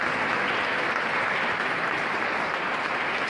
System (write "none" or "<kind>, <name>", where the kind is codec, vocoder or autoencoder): none